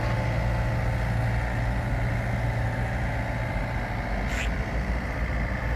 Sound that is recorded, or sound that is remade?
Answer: recorded